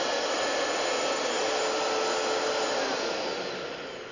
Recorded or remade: recorded